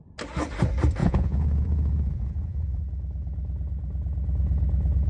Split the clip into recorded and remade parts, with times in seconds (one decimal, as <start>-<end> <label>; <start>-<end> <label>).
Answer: 0.0-1.0 recorded; 1.0-2.8 remade; 2.8-5.1 recorded